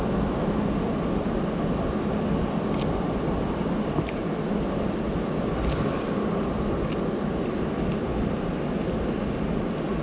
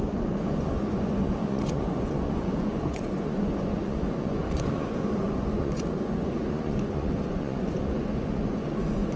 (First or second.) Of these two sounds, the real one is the first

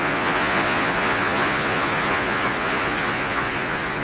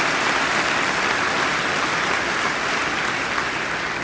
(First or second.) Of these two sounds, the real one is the second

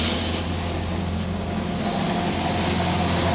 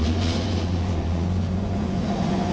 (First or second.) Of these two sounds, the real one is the first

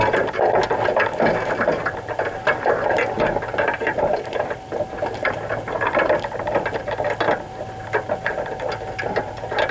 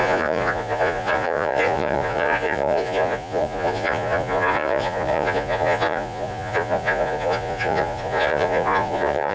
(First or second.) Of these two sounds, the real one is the first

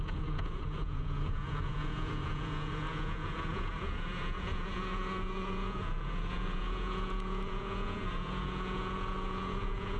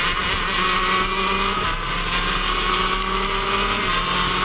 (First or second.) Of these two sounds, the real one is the second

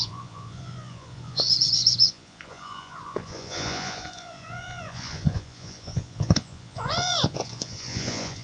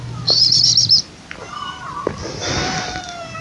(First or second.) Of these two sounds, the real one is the second